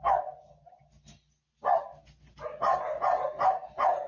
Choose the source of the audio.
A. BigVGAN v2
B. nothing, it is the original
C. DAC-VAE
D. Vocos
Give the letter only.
B